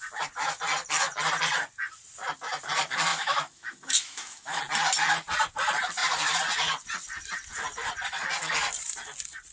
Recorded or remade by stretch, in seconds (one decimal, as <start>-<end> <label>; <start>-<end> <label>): 0.0-3.1 recorded; 3.1-4.6 remade; 4.6-9.5 recorded